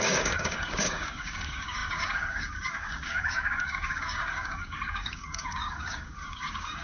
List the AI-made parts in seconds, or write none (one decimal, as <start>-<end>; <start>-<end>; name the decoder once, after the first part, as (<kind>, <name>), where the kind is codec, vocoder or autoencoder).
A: 0.0-6.8 (codec, DAC)